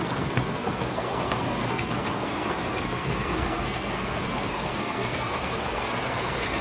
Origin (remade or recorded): remade